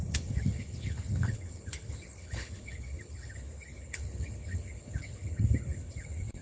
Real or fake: fake